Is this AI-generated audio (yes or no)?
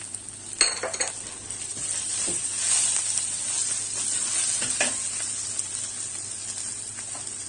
no